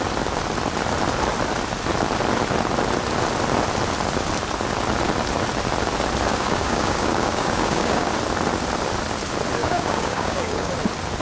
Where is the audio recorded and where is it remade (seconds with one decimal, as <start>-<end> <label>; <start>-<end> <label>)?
0.0-6.3 recorded; 6.3-8.1 remade; 8.1-9.6 recorded; 9.6-10.7 remade; 10.7-11.2 recorded